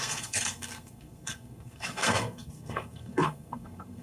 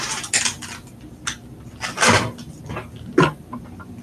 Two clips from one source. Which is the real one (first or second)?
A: second